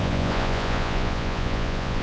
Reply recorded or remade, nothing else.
remade